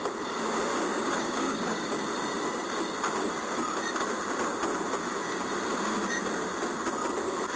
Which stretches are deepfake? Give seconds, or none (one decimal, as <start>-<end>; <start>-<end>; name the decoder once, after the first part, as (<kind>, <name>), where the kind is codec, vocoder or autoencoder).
0.9-1.9 (codec, DAC)